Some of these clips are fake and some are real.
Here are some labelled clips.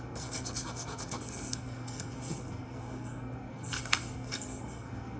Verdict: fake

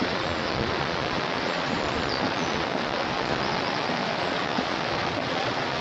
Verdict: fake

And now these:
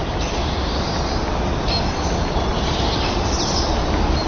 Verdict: real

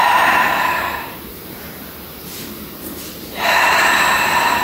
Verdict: fake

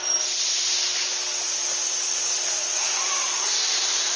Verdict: real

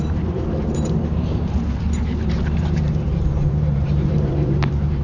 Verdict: fake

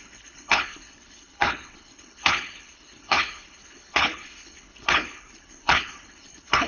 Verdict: fake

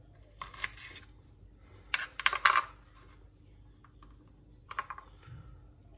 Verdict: real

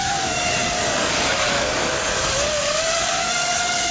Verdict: fake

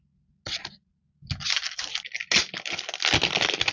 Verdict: real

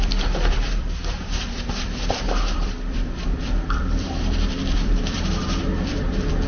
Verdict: fake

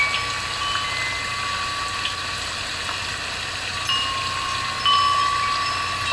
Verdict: real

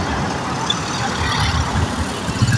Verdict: fake